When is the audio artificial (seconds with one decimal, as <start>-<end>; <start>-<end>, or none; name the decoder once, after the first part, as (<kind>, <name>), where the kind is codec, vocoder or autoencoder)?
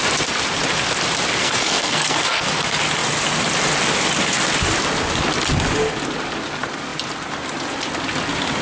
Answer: 1.4-2.5 (codec, SNAC)